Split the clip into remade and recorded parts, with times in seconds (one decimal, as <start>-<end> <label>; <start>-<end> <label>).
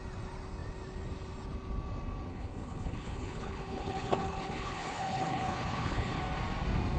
0.0-2.3 recorded; 2.3-6.2 remade; 6.2-7.0 recorded